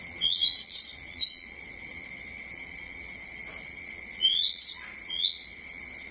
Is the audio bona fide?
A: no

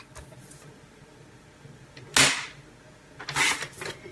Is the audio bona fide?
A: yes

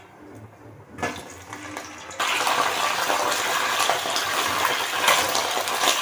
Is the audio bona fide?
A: yes